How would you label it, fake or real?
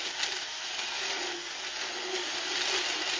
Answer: real